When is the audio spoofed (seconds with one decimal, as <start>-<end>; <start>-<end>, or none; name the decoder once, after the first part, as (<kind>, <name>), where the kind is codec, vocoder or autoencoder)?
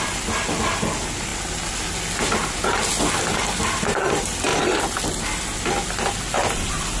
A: none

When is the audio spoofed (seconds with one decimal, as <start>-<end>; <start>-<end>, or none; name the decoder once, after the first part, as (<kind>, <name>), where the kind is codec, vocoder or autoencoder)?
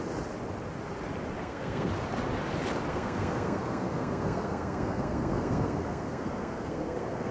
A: 1.4-1.9 (codec, SNAC); 2.9-7.3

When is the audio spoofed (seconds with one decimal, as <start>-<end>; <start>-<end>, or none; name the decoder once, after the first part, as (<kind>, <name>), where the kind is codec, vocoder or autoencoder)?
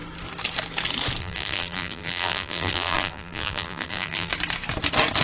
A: 1.2-4.3 (vocoder, BigVGAN v2)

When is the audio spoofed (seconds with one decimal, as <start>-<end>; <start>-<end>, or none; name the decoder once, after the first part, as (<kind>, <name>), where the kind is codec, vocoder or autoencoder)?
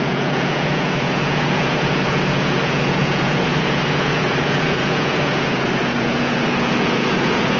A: 0.0-7.6 (vocoder, Vocos)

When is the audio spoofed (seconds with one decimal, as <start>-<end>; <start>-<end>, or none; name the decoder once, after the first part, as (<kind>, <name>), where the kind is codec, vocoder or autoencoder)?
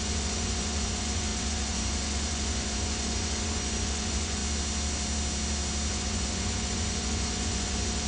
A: 0.0-4.4 (vocoder, Vocos); 5.9-8.1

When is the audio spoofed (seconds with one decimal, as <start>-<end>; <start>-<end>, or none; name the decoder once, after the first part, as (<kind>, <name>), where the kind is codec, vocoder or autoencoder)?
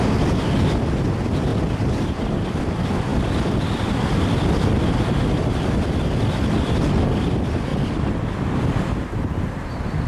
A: none